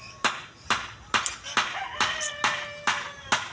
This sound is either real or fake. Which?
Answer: real